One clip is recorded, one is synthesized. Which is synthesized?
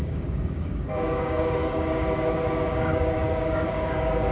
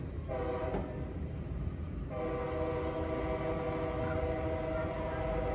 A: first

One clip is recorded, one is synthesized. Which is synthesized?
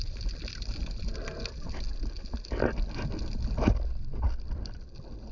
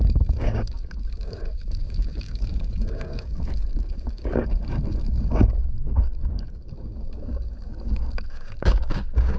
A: second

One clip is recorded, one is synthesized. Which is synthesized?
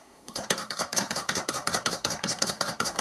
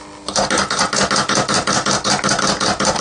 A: first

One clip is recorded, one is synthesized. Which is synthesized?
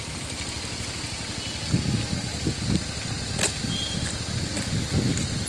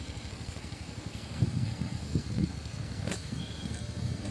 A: second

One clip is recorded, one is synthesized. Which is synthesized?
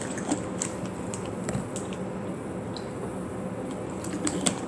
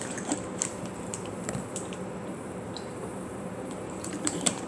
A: second